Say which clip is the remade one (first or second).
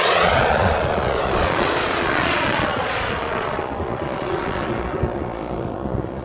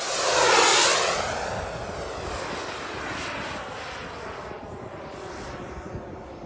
first